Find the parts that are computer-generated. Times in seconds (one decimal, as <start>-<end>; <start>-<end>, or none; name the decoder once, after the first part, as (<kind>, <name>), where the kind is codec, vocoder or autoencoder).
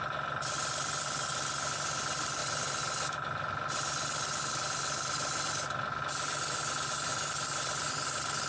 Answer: 2.4-6.0 (vocoder, BigVGAN v2); 7.1-7.9